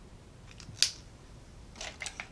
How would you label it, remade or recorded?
recorded